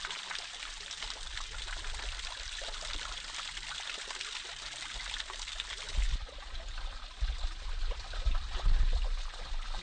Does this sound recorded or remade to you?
recorded